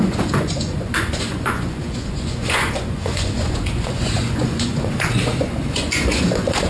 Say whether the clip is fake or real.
fake